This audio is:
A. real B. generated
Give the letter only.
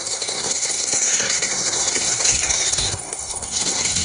B